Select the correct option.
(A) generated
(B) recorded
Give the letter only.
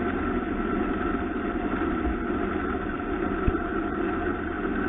B